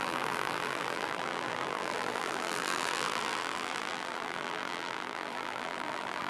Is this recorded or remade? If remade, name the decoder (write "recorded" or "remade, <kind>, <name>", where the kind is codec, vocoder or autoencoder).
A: remade, vocoder, BigVGAN v2